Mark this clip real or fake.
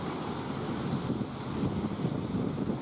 real